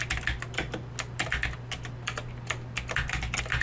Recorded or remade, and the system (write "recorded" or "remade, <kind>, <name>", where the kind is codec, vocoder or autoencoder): recorded